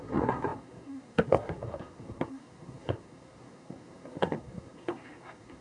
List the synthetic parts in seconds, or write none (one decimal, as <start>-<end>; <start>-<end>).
0.0-5.6